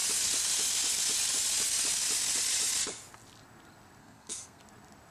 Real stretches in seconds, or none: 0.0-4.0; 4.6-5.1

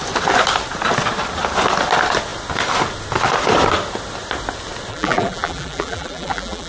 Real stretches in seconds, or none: 0.0-4.9

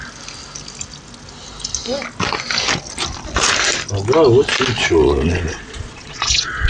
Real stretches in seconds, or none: 0.0-5.0

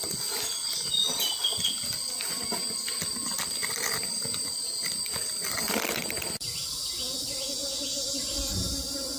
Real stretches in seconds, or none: 0.0-9.2

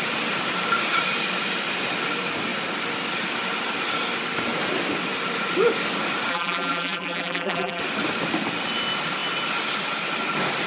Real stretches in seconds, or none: 0.0-6.3; 7.8-10.7